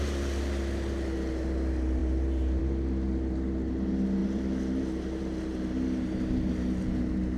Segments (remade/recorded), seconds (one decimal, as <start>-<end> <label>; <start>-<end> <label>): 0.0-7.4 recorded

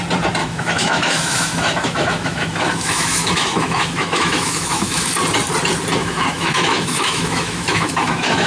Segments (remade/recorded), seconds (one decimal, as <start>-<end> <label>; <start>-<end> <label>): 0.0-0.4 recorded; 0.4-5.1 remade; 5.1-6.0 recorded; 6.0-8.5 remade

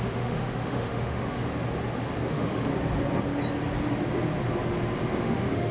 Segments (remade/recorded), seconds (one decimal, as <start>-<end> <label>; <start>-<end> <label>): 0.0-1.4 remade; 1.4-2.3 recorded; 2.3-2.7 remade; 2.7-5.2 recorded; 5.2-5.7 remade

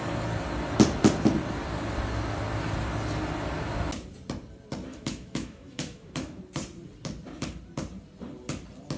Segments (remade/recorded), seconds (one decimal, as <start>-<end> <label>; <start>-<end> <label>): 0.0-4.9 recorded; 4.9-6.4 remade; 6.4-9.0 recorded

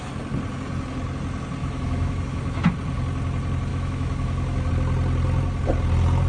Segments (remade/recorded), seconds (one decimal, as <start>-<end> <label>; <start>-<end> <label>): 0.0-1.6 recorded; 1.6-2.7 remade; 2.7-3.7 recorded; 3.7-4.7 remade; 4.7-6.3 recorded

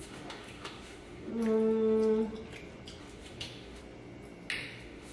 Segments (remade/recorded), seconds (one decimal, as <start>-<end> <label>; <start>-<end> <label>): 0.0-1.3 remade; 1.3-3.0 recorded; 3.0-3.8 remade; 3.8-4.6 recorded; 4.6-5.1 remade

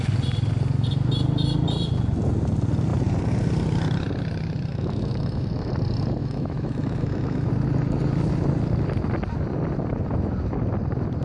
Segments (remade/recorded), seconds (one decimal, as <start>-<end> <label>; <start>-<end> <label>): 0.0-4.7 recorded; 4.7-5.7 remade; 5.7-6.2 recorded; 6.2-7.5 remade; 7.5-11.2 recorded

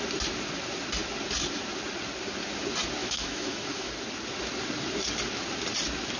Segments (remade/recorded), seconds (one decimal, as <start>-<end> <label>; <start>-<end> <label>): 0.0-3.0 recorded; 3.0-3.9 remade; 3.9-6.2 recorded